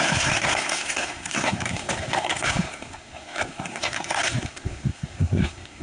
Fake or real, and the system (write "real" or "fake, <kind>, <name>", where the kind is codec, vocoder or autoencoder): fake, codec, SNAC